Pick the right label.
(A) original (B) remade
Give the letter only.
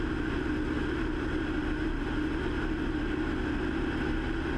A